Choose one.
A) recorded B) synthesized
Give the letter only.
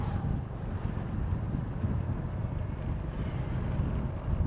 A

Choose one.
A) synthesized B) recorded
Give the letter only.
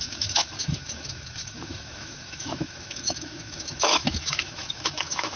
A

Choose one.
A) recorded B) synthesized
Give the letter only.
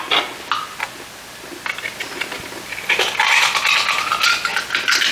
A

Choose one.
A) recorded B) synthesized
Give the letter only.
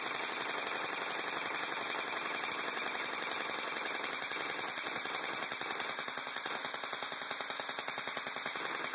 A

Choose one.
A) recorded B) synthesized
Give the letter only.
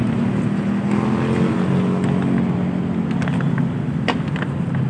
A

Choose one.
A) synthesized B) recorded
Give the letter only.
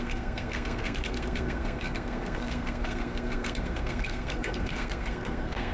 A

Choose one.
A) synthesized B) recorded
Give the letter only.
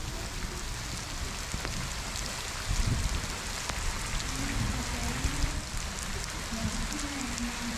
B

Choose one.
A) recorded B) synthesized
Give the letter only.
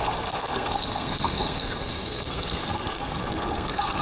B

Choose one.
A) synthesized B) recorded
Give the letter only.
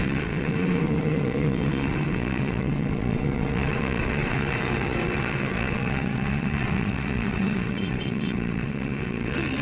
A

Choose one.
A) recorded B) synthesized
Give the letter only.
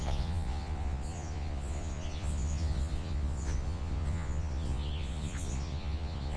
B